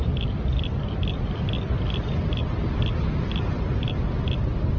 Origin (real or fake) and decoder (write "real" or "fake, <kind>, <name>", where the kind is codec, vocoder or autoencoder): real